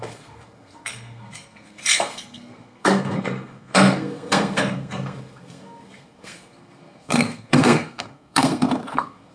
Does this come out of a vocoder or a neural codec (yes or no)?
yes